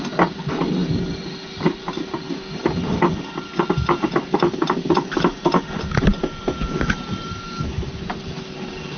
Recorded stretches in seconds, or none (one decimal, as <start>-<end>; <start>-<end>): 0.0-9.0